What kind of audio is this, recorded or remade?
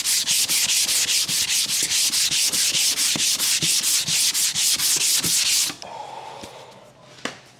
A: recorded